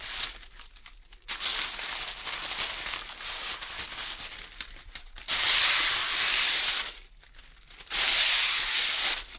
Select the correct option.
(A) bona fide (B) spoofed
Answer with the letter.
A